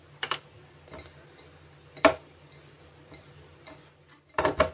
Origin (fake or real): fake